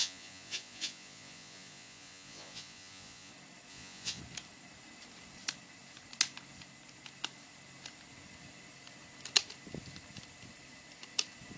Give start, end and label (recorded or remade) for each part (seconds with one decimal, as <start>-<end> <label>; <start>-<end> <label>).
0.0-3.3 remade; 3.3-3.7 recorded; 3.7-4.2 remade; 4.2-11.6 recorded